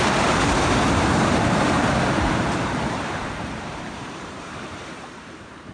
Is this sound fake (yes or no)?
yes